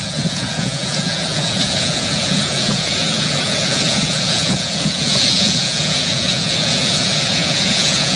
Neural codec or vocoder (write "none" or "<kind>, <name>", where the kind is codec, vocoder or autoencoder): vocoder, Vocos